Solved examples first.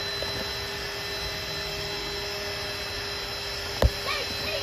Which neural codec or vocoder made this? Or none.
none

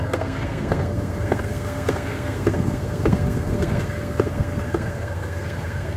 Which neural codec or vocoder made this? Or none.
codec, SNAC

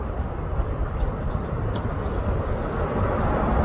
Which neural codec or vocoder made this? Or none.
none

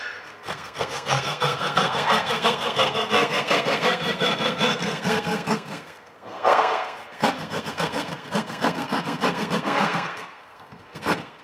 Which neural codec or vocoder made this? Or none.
codec, SNAC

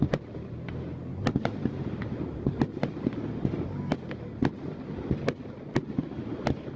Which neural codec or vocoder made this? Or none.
none